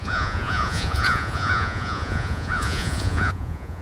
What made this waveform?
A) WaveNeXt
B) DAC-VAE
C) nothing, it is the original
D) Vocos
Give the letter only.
D